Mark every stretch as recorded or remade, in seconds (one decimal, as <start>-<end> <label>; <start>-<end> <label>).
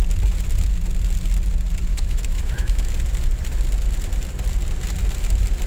0.0-1.9 recorded; 1.9-2.9 remade; 2.9-5.7 recorded